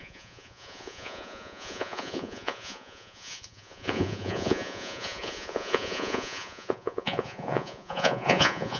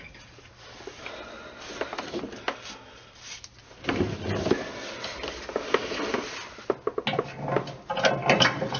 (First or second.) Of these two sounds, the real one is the second